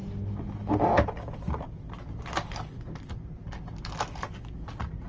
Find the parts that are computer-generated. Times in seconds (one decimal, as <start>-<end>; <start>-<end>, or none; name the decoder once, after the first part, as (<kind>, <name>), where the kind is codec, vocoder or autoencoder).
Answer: none